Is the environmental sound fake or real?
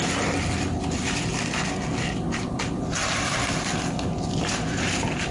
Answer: real